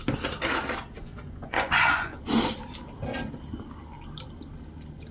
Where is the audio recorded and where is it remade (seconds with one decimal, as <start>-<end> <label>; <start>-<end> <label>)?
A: 0.0-1.0 recorded; 1.0-2.2 remade; 2.2-5.1 recorded